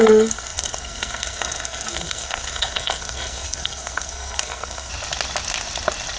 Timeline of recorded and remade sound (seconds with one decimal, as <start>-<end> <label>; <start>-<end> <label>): 0.0-4.9 remade; 4.9-6.2 recorded